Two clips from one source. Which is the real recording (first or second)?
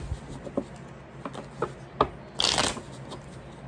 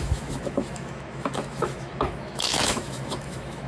first